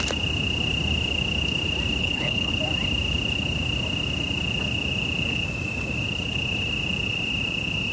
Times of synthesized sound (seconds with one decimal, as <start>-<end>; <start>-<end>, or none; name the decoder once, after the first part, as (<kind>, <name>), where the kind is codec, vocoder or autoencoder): 2.0-2.5 (codec, HILCodec)